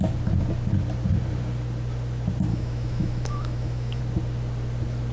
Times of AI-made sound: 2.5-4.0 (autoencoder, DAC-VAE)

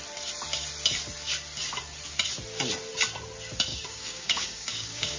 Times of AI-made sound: 3.7-5.2 (codec, DAC)